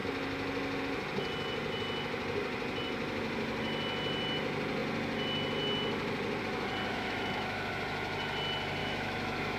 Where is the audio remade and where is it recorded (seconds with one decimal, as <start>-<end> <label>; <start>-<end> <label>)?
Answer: 0.0-6.9 recorded; 6.9-7.7 remade; 7.7-8.8 recorded; 8.8-9.6 remade